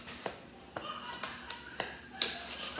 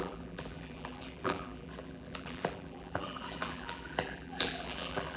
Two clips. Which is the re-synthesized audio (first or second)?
second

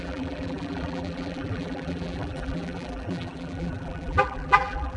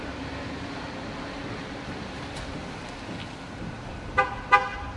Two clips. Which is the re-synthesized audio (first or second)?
first